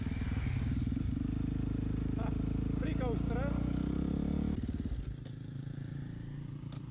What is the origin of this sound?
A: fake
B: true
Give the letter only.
B